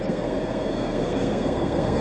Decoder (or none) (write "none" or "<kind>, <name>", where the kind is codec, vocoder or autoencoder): codec, SNAC